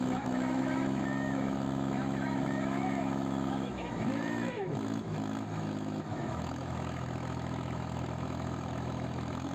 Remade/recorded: remade